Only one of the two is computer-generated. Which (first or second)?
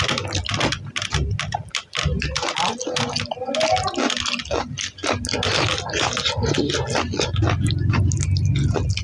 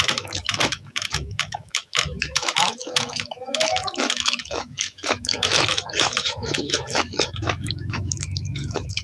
second